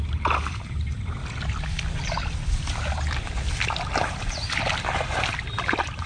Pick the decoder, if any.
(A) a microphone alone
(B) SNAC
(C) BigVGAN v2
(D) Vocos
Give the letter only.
A